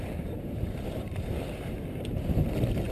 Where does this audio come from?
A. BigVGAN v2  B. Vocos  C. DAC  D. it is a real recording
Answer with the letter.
A